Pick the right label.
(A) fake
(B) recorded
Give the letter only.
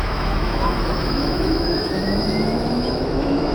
A